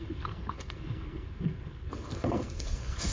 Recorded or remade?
remade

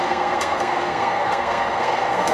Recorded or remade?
remade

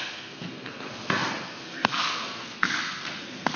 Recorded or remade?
remade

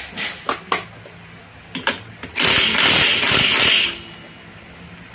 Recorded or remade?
recorded